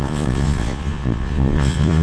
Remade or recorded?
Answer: remade